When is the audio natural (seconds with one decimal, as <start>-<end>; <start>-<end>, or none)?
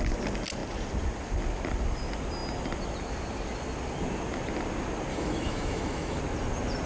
0.0-5.1; 6.2-6.9